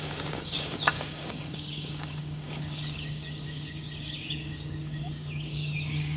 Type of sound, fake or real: fake